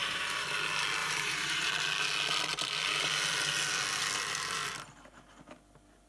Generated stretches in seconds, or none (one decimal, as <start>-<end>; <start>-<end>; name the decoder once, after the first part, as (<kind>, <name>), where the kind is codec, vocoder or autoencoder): 0.0-0.5 (vocoder, BigVGAN v2); 1.0-1.7